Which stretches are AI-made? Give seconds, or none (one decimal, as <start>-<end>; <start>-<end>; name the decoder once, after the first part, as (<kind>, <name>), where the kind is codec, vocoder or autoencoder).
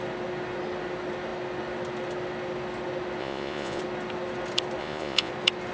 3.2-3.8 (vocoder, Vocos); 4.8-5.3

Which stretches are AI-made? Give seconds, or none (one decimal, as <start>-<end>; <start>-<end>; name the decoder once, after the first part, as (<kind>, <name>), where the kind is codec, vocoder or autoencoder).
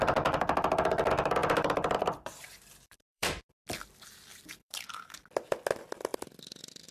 1.4-3.5 (vocoder, BigVGAN v2); 4.3-5.0; 6.1-6.9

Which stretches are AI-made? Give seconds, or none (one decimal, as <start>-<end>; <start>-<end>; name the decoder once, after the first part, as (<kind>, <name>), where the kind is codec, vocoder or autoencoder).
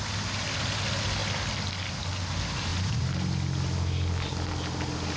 none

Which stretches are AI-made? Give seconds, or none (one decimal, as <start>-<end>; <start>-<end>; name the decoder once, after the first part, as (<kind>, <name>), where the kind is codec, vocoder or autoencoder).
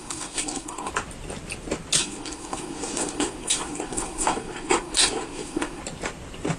0.0-0.9 (codec, SNAC); 2.0-5.8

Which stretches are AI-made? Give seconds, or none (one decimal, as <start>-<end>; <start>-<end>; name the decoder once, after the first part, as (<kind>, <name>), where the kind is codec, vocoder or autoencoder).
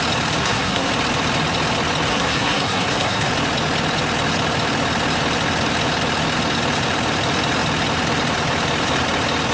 0.4-0.9 (codec, SNAC); 2.1-3.3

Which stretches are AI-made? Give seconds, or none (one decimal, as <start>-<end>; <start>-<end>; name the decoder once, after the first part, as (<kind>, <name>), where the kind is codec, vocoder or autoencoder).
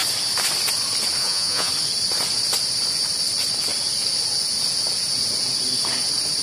1.2-1.7 (vocoder, Vocos)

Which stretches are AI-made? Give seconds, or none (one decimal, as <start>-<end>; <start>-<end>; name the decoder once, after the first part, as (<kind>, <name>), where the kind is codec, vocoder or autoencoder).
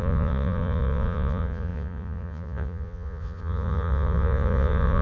0.0-5.0 (vocoder, Vocos)